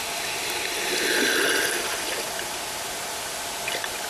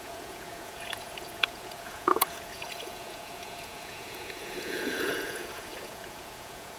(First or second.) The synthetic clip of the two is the second